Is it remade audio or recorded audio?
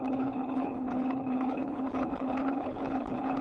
remade